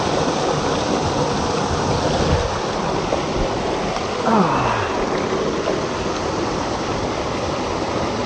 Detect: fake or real real